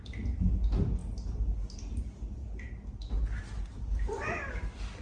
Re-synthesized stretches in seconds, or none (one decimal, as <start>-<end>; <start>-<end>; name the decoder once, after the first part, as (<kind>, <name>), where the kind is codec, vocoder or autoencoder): none